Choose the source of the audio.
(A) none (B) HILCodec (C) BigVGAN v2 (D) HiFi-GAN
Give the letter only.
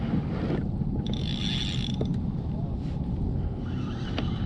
A